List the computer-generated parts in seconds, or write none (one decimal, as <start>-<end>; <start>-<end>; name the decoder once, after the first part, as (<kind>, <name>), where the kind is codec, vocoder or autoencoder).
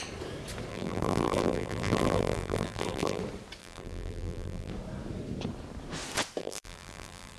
0.7-3.2 (vocoder, BigVGAN v2); 3.6-4.7; 6.4-7.4